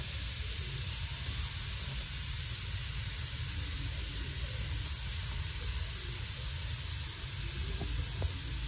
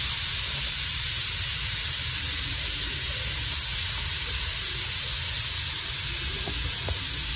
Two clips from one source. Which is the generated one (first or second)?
second